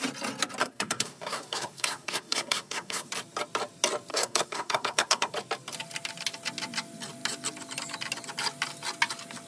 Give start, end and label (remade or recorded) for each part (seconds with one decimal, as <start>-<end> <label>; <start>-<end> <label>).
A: 0.0-0.6 recorded; 0.6-3.1 remade; 3.1-4.1 recorded; 4.1-5.3 remade; 5.3-9.5 recorded